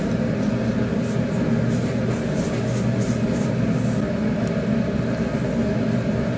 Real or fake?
real